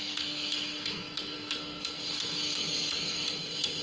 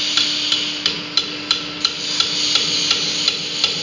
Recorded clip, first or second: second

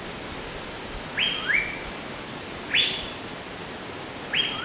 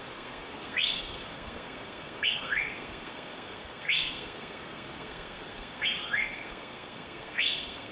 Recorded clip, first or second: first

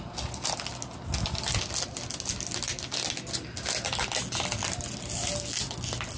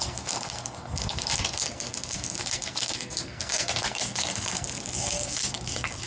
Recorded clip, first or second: first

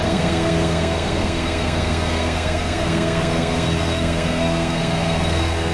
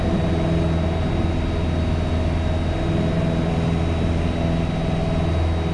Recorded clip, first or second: second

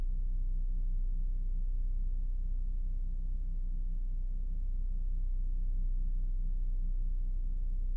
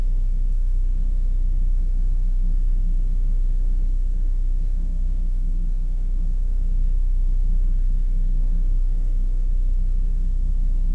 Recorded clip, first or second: first